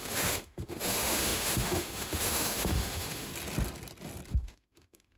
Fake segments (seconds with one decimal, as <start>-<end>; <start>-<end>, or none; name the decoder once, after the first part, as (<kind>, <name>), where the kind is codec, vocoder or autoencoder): 0.0-3.3 (autoencoder, DAC-VAE); 4.3-5.2